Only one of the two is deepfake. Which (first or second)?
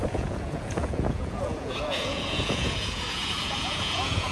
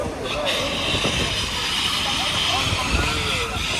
first